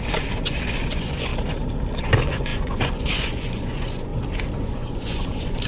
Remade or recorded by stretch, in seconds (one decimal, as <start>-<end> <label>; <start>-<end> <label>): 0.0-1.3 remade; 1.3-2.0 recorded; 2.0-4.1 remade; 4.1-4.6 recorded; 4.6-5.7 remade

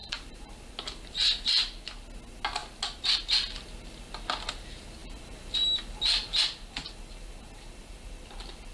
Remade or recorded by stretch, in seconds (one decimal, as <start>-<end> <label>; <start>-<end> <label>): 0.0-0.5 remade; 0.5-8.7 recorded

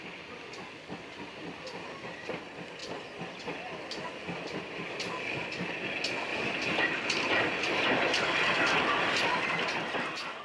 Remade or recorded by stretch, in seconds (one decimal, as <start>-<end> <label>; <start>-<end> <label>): 0.0-10.4 recorded

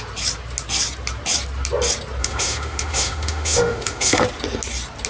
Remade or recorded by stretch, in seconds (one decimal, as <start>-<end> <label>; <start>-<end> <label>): 0.0-2.2 recorded; 2.2-4.2 remade; 4.2-5.1 recorded